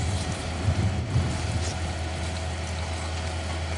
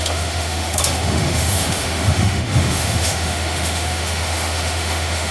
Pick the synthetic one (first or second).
second